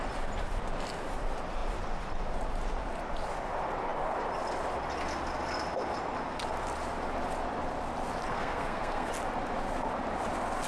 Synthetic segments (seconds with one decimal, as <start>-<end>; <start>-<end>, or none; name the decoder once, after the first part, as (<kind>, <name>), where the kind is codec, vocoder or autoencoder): 8.3-9.1 (codec, SNAC)